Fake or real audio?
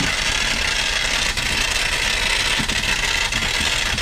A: real